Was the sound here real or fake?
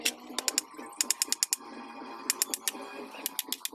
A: real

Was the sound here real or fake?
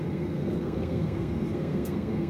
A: fake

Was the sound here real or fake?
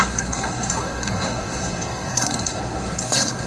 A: fake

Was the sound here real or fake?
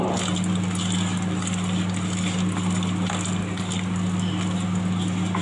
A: real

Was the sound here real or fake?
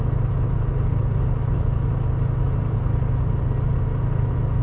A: real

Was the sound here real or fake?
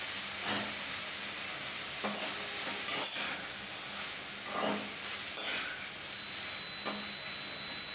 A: real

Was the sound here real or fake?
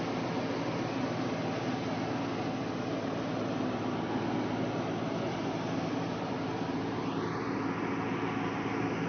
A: real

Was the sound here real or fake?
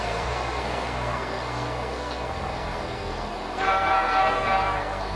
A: fake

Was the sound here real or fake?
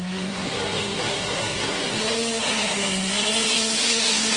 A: fake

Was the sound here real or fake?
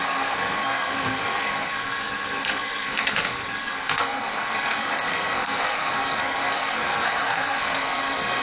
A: fake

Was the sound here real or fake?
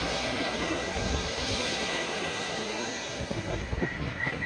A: fake